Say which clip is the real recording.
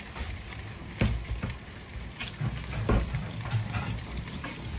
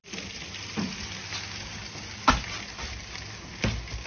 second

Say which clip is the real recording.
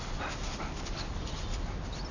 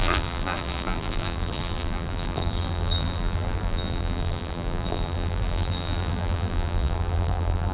first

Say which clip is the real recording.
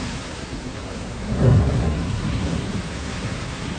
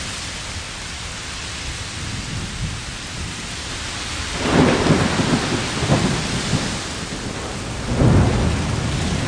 second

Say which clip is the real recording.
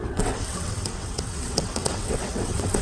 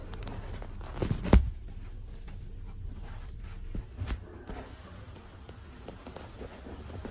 second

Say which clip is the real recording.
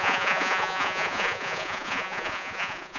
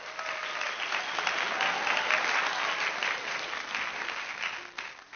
second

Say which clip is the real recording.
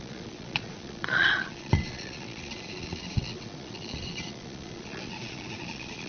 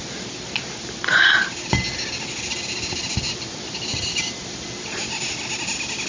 second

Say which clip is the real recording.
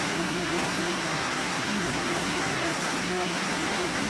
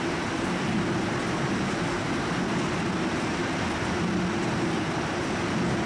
second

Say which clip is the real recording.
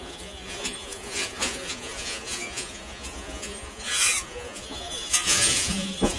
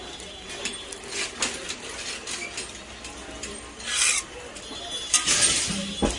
second